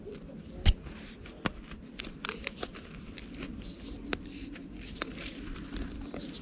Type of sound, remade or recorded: recorded